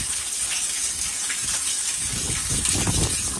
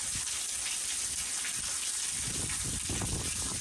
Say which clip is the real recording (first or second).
second